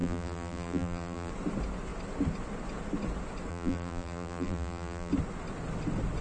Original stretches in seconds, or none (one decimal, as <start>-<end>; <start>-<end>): 1.3-3.5; 5.1-6.2